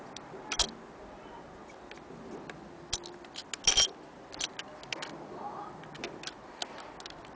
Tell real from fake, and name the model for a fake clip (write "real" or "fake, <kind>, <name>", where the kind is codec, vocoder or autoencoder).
real